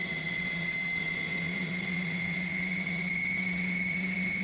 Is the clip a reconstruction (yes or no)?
yes